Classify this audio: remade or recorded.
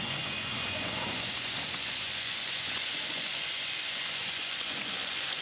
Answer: remade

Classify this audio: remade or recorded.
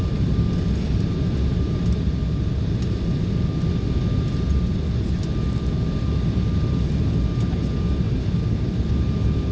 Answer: recorded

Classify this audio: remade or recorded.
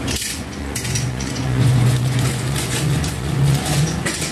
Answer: remade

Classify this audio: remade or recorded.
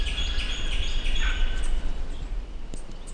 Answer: recorded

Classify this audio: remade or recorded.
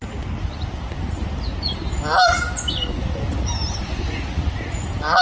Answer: recorded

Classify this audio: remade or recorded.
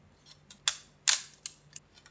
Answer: recorded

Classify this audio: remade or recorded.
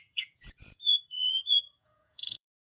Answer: remade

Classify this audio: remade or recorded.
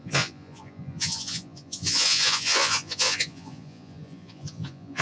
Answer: remade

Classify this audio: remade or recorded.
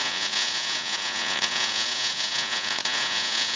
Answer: remade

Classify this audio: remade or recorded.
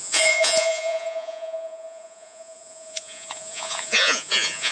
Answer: remade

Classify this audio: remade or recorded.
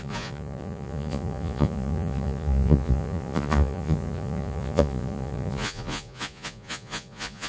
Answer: remade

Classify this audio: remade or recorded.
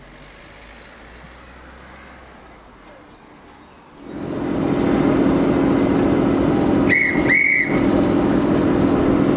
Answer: recorded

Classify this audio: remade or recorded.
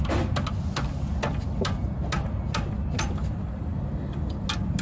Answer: recorded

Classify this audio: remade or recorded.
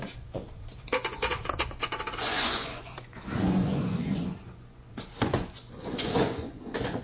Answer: remade